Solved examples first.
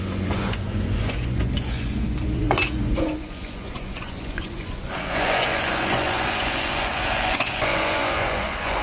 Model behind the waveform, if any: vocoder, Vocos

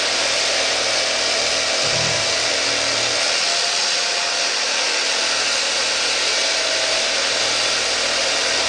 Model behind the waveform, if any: none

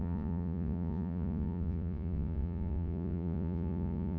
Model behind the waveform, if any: vocoder, Vocos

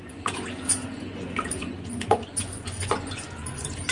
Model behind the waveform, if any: vocoder, Vocos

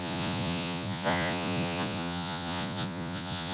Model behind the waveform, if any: vocoder, Vocos